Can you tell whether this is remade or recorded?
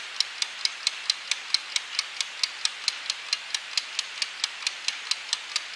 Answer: recorded